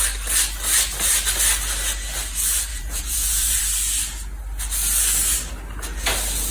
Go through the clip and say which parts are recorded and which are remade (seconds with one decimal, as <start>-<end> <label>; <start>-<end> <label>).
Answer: 0.0-2.7 recorded; 2.7-3.6 remade; 3.6-6.5 recorded